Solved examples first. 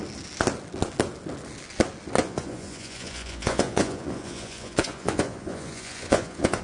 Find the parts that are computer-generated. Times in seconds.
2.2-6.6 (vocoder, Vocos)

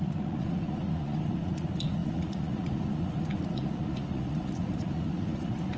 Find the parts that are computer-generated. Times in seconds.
0.0-5.8 (vocoder, Vocos)

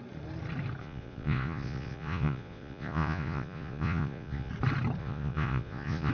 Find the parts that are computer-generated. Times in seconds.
0.8-4.5 (vocoder, Vocos); 5.0-6.1